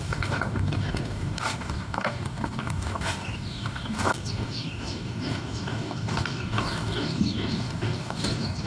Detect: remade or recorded remade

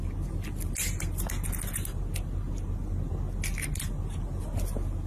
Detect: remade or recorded recorded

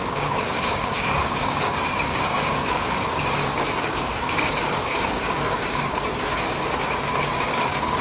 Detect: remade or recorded remade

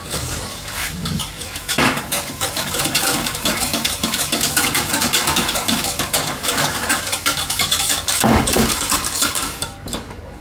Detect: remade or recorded remade